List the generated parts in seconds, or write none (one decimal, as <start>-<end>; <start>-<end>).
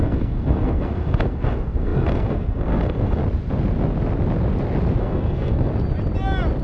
0.0-3.2; 5.0-5.7